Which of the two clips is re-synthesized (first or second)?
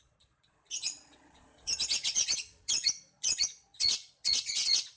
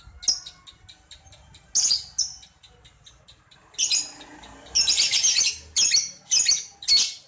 first